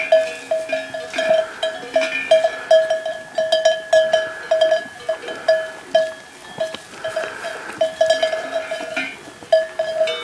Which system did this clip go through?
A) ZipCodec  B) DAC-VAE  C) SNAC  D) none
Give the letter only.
D